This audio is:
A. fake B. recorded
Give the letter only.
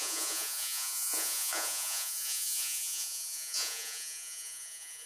A